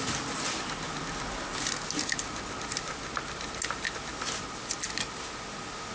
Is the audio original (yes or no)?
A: yes